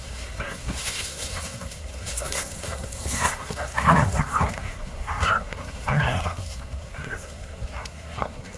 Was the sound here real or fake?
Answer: fake